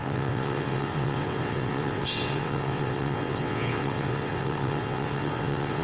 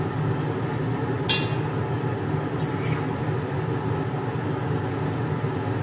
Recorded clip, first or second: second